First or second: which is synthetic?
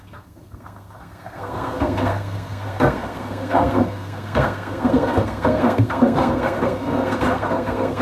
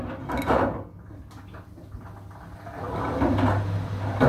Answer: first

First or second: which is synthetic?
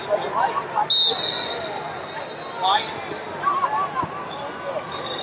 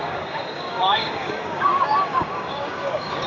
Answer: second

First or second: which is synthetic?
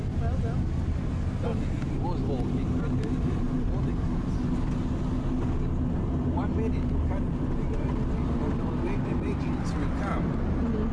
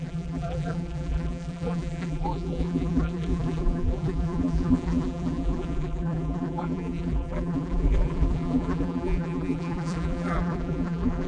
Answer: second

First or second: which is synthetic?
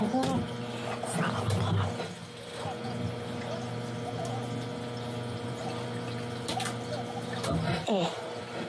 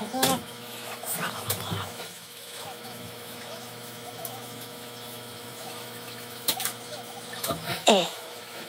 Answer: second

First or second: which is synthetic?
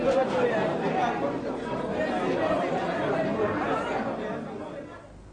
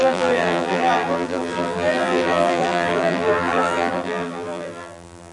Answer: second